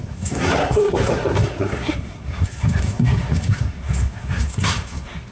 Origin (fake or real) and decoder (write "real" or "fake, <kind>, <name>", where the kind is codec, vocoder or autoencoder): fake, codec, SNAC